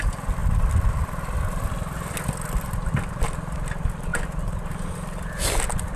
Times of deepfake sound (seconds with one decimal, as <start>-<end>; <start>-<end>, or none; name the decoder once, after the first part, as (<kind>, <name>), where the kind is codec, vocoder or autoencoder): none